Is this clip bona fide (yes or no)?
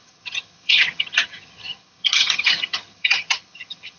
no